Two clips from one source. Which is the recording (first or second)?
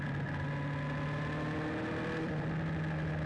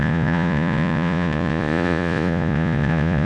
first